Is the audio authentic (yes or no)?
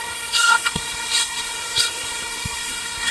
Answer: no